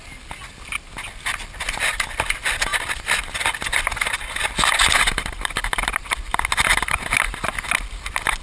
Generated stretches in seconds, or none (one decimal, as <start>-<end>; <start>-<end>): none